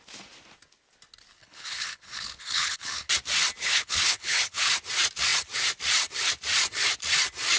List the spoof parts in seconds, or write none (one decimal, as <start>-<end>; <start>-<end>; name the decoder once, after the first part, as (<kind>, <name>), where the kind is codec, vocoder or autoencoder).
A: 1.4-3.1 (codec, HILCodec); 3.6-4.7